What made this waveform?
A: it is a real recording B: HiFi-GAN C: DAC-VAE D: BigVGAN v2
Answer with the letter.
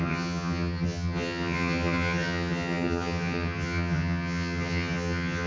B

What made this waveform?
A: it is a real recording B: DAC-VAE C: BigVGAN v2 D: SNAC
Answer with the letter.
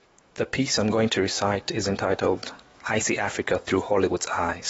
B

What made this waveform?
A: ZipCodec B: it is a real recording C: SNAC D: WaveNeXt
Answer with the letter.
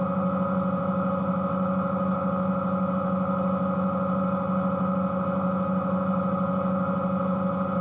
B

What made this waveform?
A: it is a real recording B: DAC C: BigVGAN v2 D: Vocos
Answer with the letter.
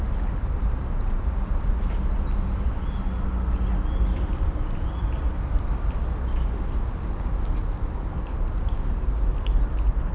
A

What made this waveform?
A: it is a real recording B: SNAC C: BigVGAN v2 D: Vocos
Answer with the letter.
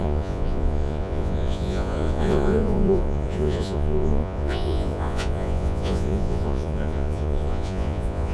D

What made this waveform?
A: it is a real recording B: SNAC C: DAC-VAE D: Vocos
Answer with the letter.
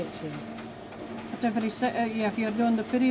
A